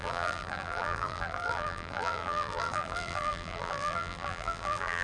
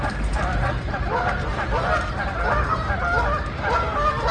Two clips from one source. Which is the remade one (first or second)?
first